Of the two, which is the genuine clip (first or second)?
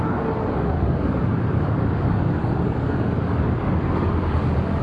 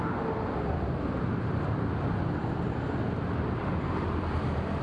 second